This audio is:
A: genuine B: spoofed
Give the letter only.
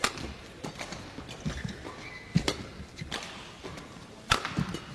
A